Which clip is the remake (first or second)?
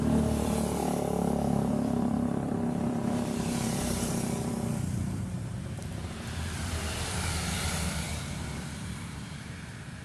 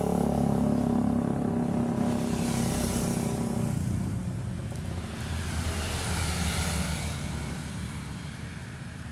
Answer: first